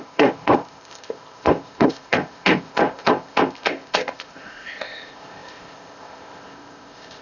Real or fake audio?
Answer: fake